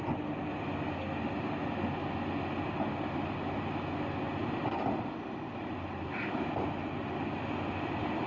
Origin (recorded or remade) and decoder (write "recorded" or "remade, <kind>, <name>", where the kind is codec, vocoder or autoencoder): recorded